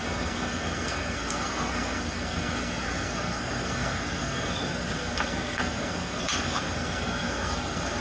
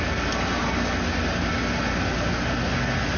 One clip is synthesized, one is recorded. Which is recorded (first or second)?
second